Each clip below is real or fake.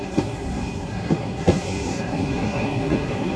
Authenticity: fake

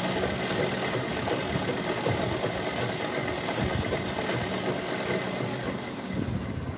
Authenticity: real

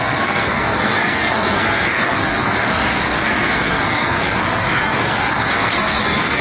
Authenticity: fake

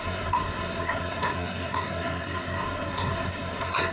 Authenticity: fake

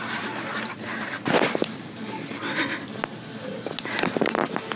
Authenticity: real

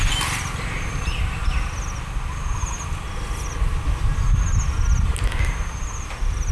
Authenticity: real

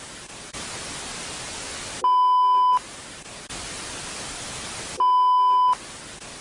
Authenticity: real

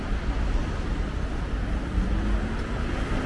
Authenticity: real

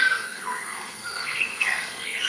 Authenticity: fake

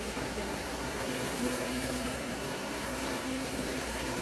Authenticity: fake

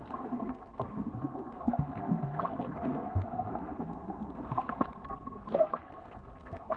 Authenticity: fake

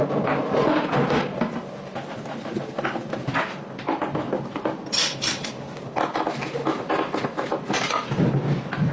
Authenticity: real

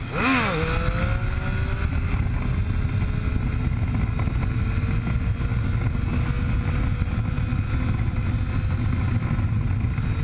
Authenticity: real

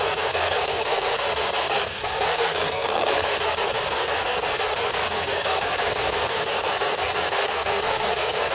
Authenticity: fake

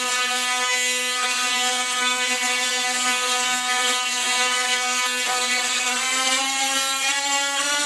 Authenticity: fake